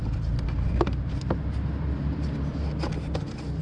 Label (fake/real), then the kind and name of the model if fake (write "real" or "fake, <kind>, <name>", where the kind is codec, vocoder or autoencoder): real